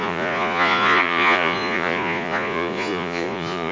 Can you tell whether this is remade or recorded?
remade